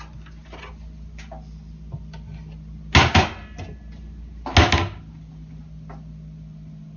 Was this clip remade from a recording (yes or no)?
no